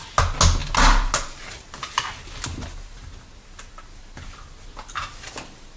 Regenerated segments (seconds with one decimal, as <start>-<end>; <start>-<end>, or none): none